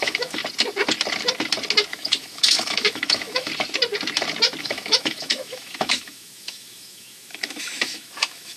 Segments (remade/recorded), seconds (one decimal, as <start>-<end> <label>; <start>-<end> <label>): 0.0-0.4 remade; 0.4-1.9 recorded; 1.9-3.5 remade; 3.5-4.6 recorded; 4.6-8.6 remade